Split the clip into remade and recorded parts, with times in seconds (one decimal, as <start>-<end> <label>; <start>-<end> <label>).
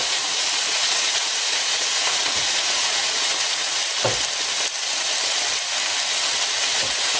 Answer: 0.0-3.8 remade; 3.8-6.6 recorded; 6.6-7.2 remade